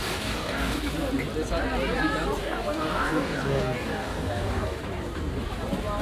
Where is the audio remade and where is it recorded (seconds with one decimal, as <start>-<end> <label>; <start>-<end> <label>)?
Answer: 0.0-0.9 remade; 0.9-2.4 recorded; 2.4-4.8 remade; 4.8-6.0 recorded